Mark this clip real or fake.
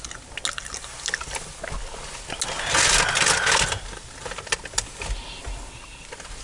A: real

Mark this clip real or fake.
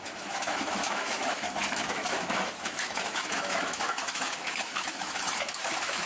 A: fake